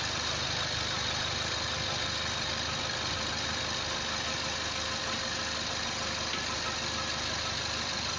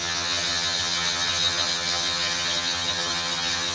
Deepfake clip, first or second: second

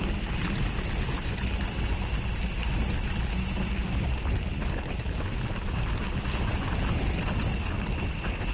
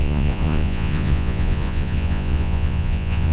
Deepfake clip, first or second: second